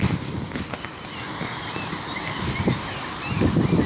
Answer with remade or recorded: recorded